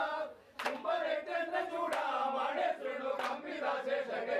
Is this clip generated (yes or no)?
no